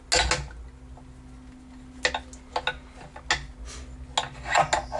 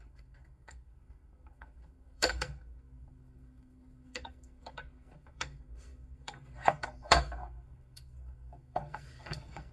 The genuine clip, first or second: first